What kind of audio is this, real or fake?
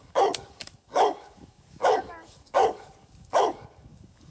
fake